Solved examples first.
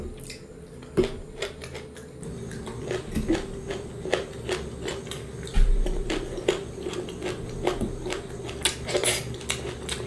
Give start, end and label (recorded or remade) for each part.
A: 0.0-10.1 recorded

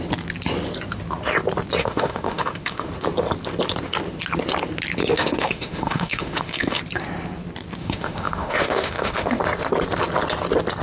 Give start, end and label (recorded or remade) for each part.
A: 0.0-1.8 recorded; 1.8-2.9 remade; 2.9-5.1 recorded; 5.1-6.8 remade; 6.8-7.8 recorded; 7.8-9.4 remade; 9.4-10.8 recorded

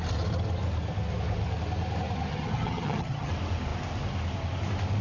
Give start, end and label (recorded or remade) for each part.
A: 0.0-2.3 recorded; 2.3-3.3 remade; 3.3-5.0 recorded

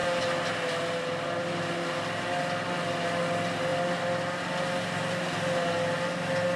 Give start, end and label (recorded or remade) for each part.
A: 0.0-6.6 recorded

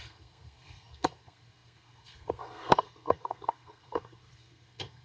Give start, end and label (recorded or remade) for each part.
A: 0.0-5.0 remade